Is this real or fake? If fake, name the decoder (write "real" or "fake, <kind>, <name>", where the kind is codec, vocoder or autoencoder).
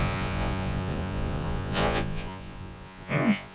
fake, vocoder, Vocos